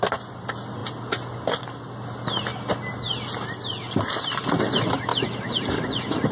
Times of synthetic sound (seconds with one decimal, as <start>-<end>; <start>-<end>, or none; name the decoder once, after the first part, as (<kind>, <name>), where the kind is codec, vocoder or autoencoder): none